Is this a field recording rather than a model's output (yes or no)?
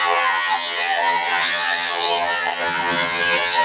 no